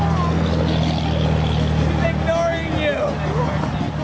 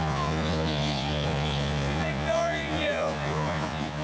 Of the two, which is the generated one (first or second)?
second